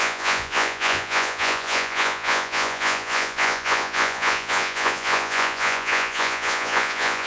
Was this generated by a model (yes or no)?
yes